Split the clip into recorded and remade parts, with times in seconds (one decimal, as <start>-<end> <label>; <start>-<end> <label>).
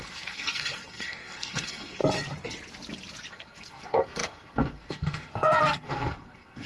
0.0-2.0 remade; 2.0-3.3 recorded; 3.3-6.7 remade